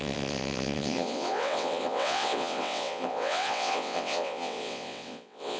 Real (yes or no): no